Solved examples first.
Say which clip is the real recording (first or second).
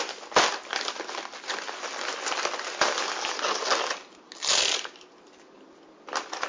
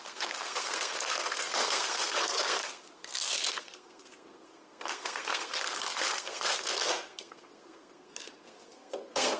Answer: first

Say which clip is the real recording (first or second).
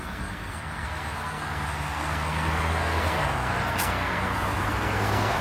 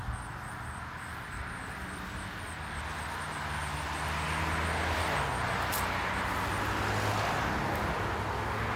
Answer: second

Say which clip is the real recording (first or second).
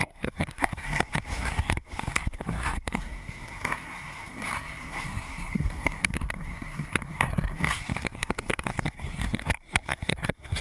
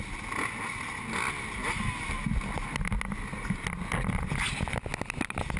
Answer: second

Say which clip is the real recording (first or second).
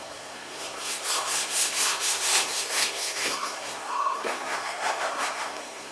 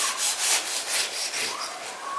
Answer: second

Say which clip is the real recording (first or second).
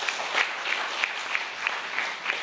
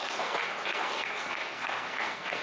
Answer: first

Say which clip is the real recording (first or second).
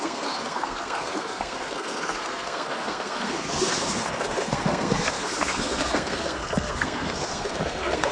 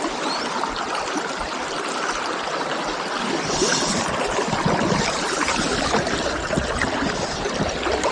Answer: second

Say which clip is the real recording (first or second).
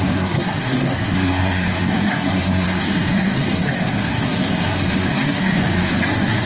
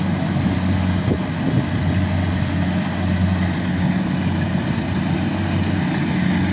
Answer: second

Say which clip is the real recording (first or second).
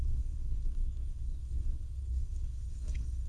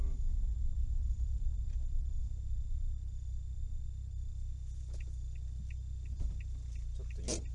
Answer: second